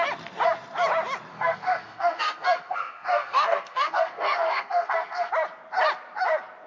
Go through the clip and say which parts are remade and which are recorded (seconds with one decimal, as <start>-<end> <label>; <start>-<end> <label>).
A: 0.0-1.3 recorded; 1.3-5.3 remade; 5.3-6.7 recorded